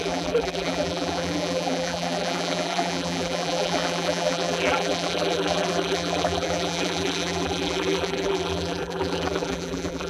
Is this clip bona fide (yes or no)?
no